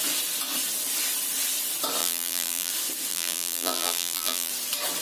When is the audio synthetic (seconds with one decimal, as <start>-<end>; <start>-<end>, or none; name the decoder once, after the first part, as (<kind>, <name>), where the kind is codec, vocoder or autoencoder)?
2.0-2.7 (vocoder, BigVGAN v2); 3.1-4.5